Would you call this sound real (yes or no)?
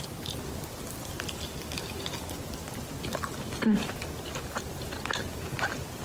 yes